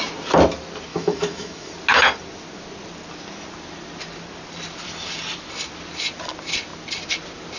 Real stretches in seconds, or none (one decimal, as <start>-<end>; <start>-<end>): 0.0-0.9; 1.7-7.6